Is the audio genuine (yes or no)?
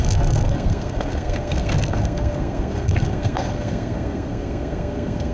no